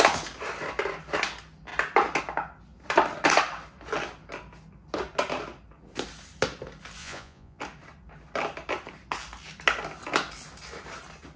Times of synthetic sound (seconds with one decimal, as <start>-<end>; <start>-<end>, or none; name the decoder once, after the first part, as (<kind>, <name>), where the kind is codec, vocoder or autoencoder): 7.0-7.6 (vocoder, Vocos)